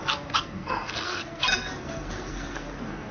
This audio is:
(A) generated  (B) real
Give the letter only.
A